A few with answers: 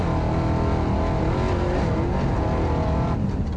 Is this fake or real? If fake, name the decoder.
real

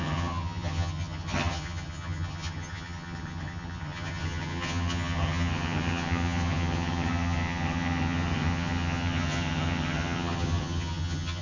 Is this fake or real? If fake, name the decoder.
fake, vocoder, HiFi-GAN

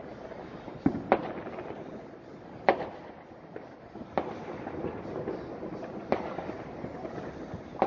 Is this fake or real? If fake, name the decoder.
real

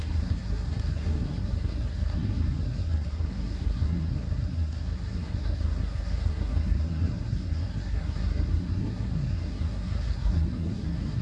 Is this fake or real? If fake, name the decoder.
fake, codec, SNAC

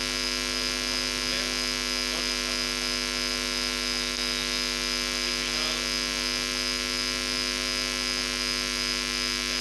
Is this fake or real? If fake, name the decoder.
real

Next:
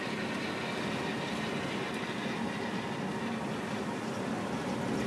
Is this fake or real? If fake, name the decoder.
real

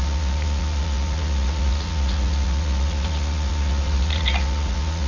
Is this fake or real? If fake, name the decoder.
fake, vocoder, Vocos